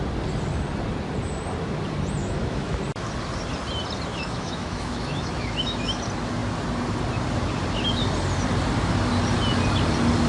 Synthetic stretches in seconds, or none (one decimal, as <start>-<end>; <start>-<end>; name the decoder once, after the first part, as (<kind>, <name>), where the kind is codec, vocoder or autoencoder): 2.2-2.8 (autoencoder, DAC-VAE); 4.1-6.0